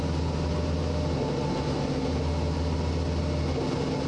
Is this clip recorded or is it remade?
recorded